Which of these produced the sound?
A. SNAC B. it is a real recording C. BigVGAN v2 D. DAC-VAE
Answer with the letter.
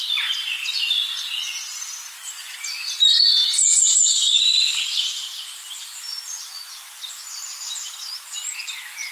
C